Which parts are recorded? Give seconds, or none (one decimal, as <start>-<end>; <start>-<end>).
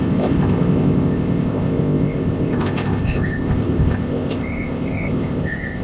none